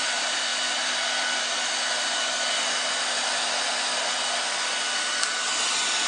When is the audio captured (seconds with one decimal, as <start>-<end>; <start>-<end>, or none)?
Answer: 0.0-6.1